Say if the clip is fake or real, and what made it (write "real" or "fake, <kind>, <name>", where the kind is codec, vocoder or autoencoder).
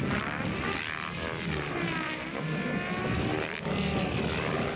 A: real